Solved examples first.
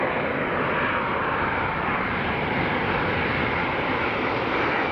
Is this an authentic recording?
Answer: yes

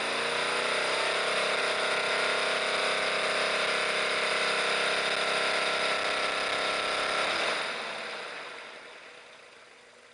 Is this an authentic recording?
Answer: yes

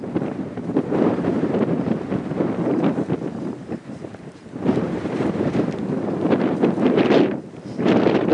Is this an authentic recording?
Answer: no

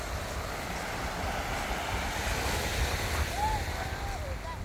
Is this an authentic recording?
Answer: yes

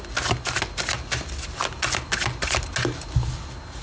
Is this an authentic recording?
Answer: yes